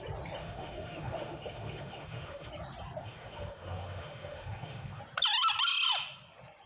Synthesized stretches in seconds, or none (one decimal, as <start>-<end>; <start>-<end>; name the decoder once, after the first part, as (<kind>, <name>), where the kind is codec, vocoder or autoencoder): 0.4-2.5 (autoencoder, DAC-VAE); 3.0-5.0